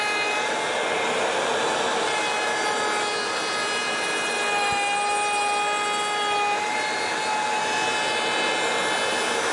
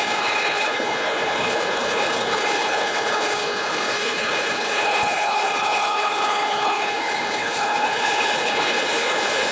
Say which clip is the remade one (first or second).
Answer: second